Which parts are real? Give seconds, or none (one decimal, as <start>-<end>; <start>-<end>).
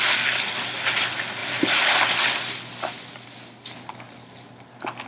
0.0-5.1